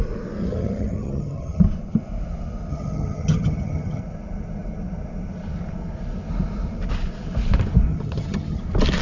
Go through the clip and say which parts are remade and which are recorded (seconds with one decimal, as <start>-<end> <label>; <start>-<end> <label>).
0.0-0.4 recorded; 0.4-1.6 remade; 1.6-2.7 recorded; 2.7-4.0 remade; 4.0-7.9 recorded; 7.9-8.6 remade; 8.6-9.0 recorded